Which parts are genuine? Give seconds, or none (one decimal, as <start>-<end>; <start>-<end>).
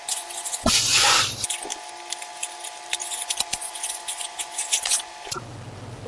1.2-3.0; 5.1-6.1